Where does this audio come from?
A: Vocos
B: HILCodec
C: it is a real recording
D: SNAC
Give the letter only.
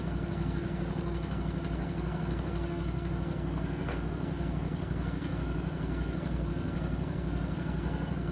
D